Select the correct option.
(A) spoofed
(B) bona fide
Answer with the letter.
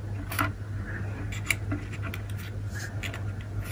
B